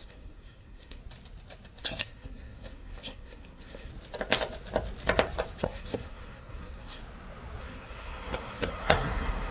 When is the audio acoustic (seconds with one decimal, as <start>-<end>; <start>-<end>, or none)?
1.0-1.8; 3.9-5.6; 7.0-7.6